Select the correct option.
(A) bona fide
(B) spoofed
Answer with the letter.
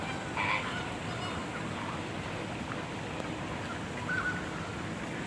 A